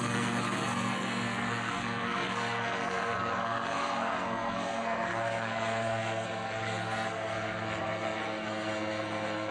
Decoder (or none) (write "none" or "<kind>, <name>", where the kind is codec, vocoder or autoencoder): codec, SNAC